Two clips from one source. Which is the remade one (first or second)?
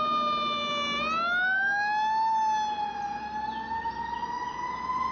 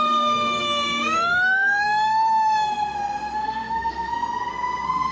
second